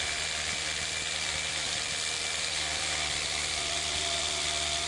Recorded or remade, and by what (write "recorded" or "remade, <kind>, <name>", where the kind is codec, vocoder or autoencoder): remade, vocoder, BigVGAN v2